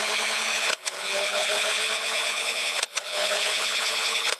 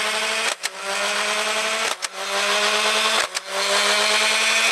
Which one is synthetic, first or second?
first